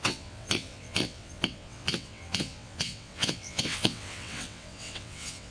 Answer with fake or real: fake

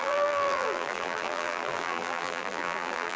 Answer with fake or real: fake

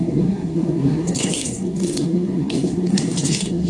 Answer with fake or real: fake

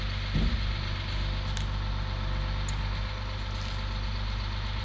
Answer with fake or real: real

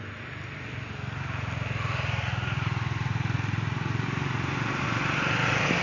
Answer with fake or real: real